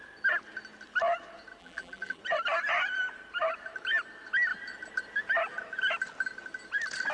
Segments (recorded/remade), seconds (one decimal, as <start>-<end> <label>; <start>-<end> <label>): 0.0-1.6 recorded; 1.6-2.2 remade; 2.2-7.1 recorded